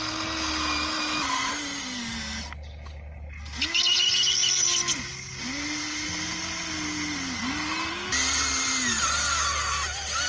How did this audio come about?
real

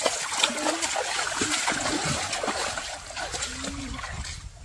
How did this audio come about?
real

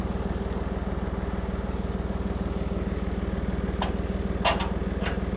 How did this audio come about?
real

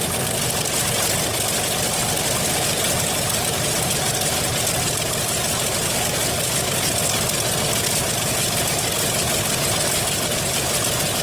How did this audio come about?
real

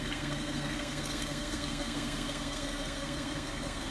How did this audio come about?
fake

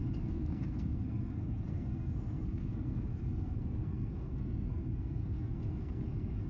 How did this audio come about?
fake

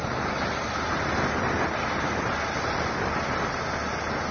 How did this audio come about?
real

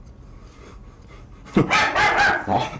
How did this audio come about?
real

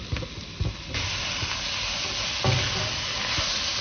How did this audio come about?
real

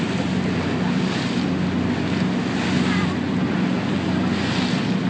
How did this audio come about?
real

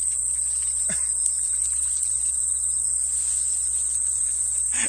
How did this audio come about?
real